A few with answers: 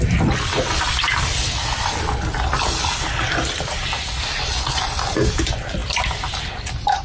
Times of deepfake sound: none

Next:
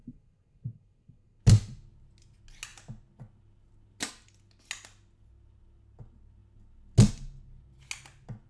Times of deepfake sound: 0.0-1.4 (codec, SNAC)

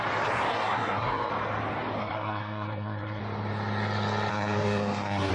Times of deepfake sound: 0.5-1.3 (codec, SNAC); 2.0-3.2; 4.3-5.3